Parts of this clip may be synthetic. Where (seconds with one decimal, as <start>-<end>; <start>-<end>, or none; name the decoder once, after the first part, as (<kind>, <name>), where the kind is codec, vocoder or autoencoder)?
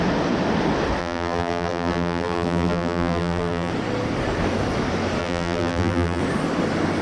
1.0-3.7 (vocoder, BigVGAN v2); 5.2-6.2